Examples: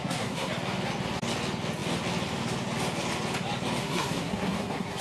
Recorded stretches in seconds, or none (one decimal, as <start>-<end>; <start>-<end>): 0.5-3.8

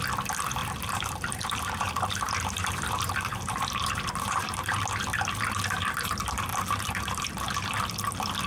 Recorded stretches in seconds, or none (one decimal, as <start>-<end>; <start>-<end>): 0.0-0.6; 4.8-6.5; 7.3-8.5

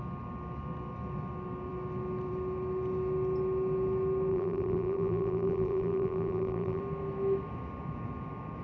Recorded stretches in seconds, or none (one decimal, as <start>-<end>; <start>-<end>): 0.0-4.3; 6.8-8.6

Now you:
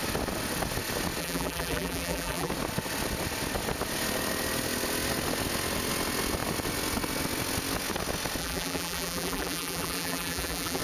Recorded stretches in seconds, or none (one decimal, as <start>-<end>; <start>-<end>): 0.0-1.2; 2.5-8.4

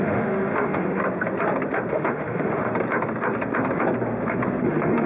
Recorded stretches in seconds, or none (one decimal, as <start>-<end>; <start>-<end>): 1.0-1.9; 2.6-4.6

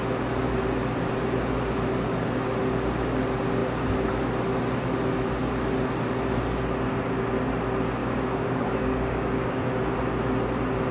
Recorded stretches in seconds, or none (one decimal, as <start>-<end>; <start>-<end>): 0.0-8.0; 9.6-10.9

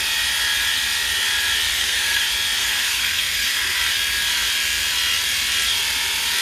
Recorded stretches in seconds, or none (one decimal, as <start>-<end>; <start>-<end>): 0.0-1.7; 2.2-2.6; 3.8-6.4